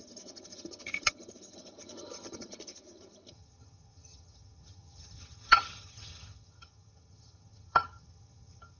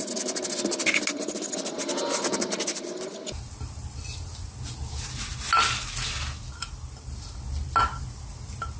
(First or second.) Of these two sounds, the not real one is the first